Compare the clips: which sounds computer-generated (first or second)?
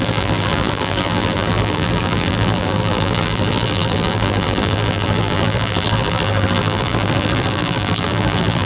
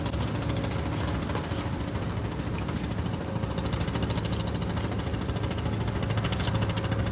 first